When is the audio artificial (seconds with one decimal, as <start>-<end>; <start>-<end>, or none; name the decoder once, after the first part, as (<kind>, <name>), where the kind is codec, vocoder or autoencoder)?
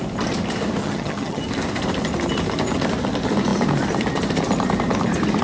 0.8-1.4 (vocoder, HiFi-GAN)